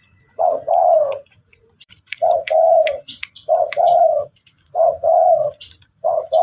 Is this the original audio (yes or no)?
no